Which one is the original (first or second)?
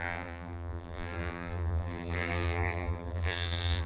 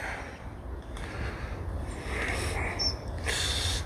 second